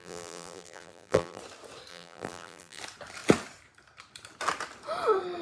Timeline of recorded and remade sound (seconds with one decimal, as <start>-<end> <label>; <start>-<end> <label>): 0.0-1.4 remade; 1.4-1.9 recorded; 1.9-2.8 remade; 2.8-5.4 recorded